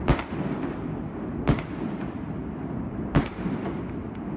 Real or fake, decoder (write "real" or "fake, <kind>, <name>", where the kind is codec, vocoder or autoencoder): real